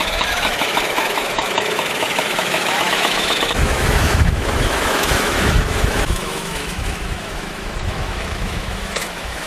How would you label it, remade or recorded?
remade